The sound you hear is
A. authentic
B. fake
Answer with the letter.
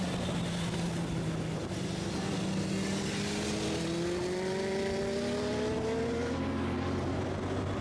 A